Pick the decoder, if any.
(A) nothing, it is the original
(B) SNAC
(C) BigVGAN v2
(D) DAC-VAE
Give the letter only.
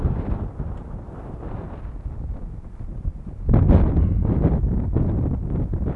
A